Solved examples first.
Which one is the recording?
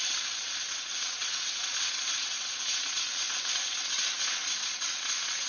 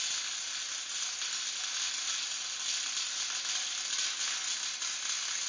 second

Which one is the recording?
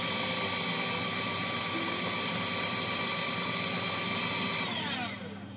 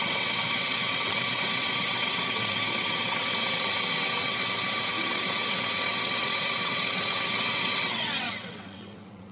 first